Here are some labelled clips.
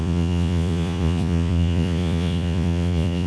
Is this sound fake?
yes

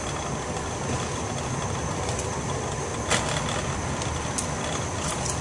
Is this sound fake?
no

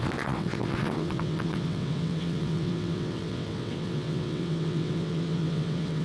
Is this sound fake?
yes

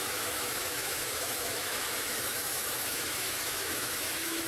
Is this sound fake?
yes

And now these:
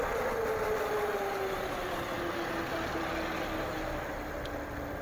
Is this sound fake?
no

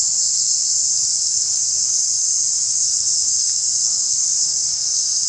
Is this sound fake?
yes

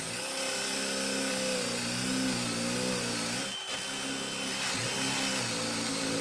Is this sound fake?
no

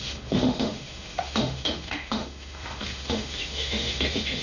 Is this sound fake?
yes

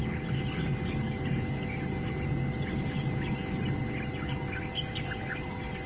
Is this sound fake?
no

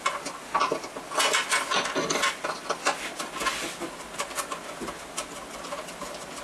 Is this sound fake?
no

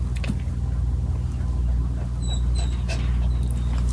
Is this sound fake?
no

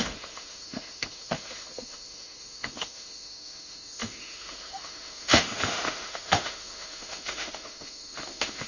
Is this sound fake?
yes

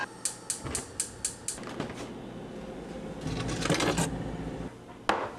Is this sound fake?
no